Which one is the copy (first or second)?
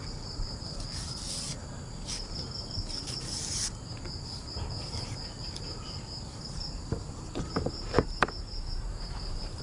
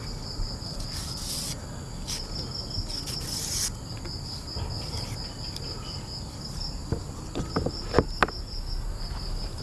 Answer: first